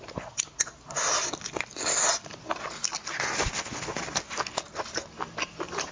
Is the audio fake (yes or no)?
no